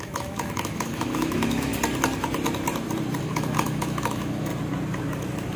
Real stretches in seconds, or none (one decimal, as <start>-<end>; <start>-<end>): 1.7-3.2; 4.5-5.6